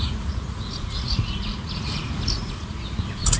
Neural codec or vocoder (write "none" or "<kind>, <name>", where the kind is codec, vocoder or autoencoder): vocoder, Vocos